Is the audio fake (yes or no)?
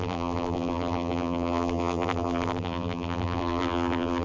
yes